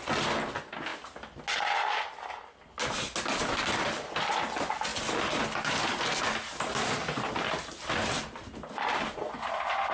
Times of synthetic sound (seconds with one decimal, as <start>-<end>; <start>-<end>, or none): none